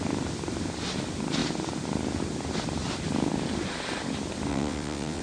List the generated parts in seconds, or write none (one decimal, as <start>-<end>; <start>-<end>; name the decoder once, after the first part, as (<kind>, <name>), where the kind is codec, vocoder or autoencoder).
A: 4.5-5.2 (vocoder, WaveNeXt)